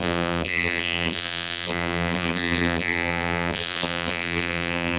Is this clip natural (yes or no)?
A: no